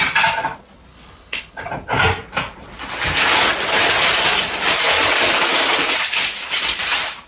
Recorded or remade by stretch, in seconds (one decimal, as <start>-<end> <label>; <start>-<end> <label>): 0.0-0.9 recorded; 0.9-1.7 remade; 1.7-7.3 recorded